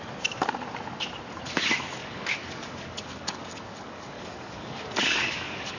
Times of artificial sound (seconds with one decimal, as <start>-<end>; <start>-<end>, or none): 2.0-5.8